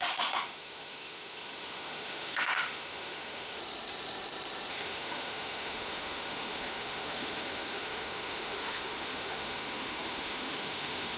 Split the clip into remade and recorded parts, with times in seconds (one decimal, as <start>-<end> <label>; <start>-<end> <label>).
0.0-3.6 remade; 3.6-4.7 recorded; 4.7-11.2 remade